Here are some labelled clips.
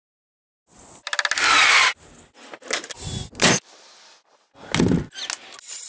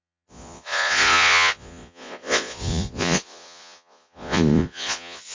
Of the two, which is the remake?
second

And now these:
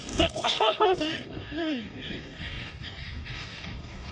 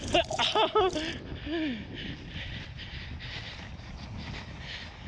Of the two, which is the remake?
first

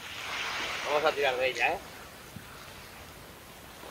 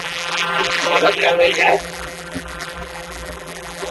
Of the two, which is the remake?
second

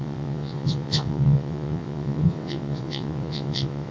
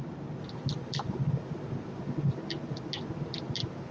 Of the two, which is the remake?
first